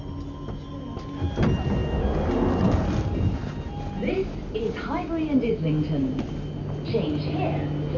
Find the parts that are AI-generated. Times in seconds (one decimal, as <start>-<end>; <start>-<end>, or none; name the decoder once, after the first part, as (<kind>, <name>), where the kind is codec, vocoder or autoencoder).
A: none